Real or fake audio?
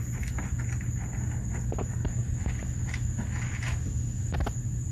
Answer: real